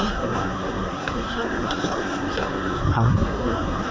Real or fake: fake